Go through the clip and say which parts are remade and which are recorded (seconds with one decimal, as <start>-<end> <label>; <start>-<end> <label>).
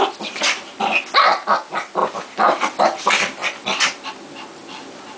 0.0-2.0 recorded; 2.0-2.8 remade; 2.8-3.4 recorded; 3.4-4.1 remade; 4.1-5.2 recorded